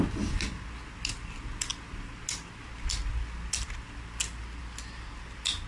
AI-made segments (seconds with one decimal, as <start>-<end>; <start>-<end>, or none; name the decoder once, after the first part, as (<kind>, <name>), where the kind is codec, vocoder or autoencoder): none